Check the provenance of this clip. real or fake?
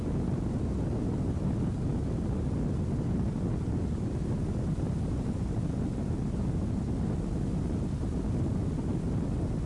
real